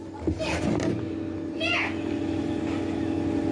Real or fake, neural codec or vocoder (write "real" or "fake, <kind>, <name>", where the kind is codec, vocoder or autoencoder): real